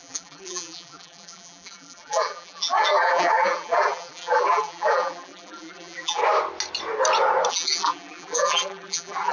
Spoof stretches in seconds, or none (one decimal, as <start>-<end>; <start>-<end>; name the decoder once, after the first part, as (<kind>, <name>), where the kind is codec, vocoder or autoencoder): 0.0-6.2 (vocoder, BigVGAN v2); 7.5-9.3